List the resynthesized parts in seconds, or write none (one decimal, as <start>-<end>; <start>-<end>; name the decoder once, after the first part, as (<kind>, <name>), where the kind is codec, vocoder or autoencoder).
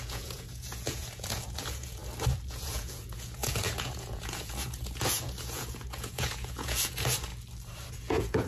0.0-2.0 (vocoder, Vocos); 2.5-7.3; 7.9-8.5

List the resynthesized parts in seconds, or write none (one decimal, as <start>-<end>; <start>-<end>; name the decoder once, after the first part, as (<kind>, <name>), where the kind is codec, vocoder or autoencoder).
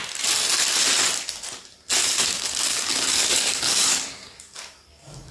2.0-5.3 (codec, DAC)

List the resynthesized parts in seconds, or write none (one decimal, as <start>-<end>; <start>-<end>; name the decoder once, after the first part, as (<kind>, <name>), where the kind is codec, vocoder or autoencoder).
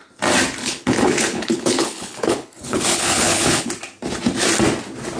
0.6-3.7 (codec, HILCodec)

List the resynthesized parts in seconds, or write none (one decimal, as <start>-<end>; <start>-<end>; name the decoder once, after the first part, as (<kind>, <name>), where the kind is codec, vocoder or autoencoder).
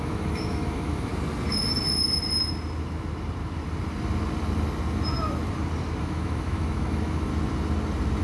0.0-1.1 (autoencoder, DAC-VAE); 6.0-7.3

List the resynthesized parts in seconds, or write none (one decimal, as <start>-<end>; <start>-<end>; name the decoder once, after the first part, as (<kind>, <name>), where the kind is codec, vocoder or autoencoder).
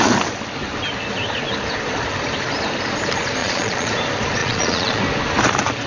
3.4-3.9 (vocoder, Vocos); 4.4-5.0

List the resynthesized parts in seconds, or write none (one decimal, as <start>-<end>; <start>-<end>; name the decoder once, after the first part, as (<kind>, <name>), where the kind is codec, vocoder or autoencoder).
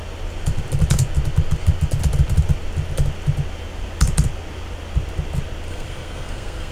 5.7-6.7 (codec, SNAC)